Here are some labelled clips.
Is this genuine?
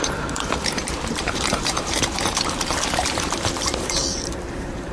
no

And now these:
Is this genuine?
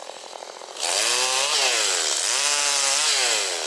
yes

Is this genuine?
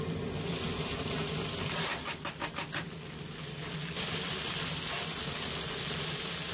yes